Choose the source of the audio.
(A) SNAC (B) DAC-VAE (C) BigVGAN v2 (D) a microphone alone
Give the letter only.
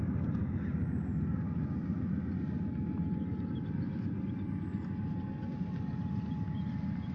D